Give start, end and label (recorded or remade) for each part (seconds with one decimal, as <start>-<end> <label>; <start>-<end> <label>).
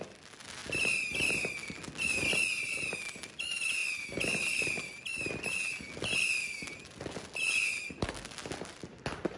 0.0-9.4 recorded